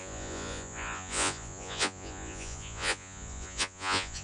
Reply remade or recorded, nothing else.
remade